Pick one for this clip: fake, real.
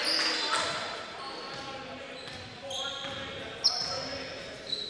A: real